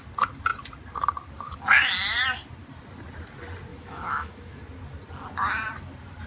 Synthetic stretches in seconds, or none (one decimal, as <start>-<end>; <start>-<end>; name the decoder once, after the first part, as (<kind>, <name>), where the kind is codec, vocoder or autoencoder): 3.7-4.6 (autoencoder, DAC-VAE)